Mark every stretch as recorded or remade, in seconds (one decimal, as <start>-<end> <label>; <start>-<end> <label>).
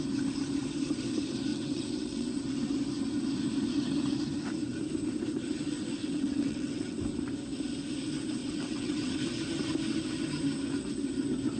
0.0-1.5 recorded; 1.5-2.4 remade; 2.4-6.0 recorded; 6.0-7.0 remade; 7.0-8.4 recorded; 8.4-9.1 remade; 9.1-11.6 recorded